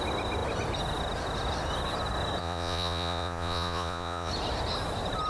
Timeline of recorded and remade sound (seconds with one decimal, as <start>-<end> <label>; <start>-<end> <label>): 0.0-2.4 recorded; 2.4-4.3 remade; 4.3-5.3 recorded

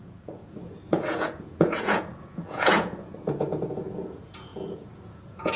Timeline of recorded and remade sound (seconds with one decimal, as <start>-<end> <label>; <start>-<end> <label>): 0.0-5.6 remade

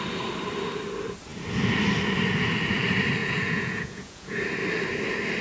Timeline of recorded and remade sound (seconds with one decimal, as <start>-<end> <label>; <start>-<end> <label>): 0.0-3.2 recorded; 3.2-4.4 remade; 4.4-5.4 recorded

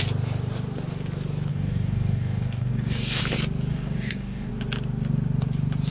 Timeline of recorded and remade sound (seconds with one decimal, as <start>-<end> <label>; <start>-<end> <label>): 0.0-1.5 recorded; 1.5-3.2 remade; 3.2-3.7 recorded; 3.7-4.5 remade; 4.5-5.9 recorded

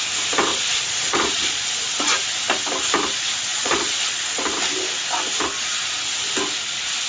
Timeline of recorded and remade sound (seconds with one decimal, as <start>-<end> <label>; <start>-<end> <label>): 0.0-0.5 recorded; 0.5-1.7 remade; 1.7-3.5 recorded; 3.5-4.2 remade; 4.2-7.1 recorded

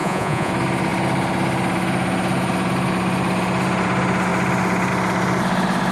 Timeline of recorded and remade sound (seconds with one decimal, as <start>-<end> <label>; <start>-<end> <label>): 0.0-0.5 remade; 0.5-5.9 recorded

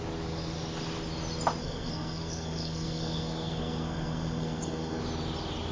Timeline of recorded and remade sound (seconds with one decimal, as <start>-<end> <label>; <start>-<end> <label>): 0.0-1.6 recorded; 1.6-5.0 remade; 5.0-5.7 recorded